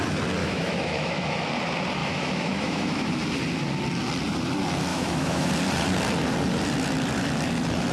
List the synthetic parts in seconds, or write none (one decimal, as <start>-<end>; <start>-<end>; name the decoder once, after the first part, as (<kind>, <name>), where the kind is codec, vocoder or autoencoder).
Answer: 0.4-1.5 (autoencoder, DAC-VAE); 2.0-3.1; 4.9-5.5